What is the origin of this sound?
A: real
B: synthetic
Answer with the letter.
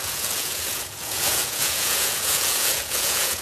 B